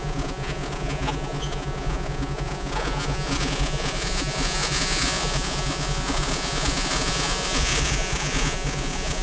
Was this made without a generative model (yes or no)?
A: no